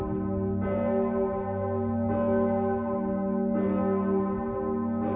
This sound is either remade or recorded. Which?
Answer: recorded